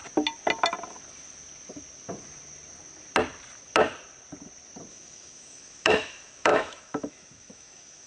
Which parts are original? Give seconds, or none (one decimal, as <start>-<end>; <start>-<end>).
0.0-4.9